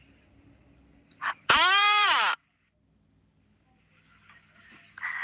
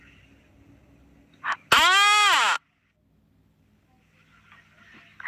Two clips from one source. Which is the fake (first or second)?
first